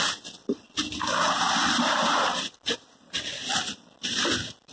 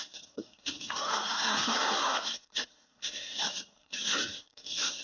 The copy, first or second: second